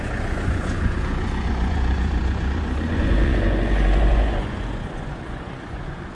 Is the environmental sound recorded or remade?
remade